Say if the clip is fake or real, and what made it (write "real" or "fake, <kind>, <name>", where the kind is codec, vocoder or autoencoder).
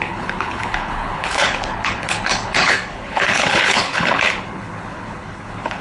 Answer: fake, codec, HILCodec